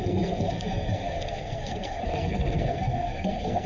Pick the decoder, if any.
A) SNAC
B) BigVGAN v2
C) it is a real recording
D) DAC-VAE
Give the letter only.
A